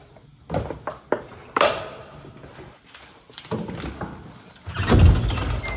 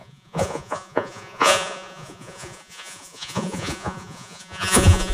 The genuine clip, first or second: first